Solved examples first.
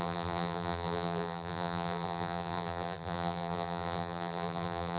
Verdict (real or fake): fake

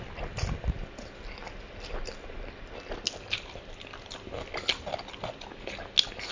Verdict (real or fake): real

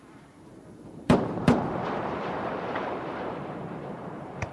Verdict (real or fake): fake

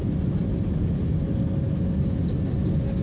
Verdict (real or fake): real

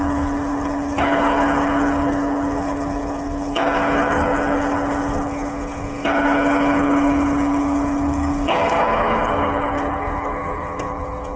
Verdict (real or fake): fake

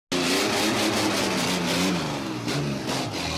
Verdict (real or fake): real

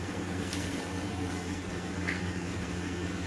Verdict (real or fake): fake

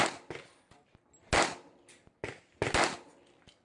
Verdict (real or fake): real